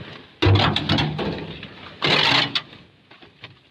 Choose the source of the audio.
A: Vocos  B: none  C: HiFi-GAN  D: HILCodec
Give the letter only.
B